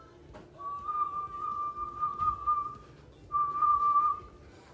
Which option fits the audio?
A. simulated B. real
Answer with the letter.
B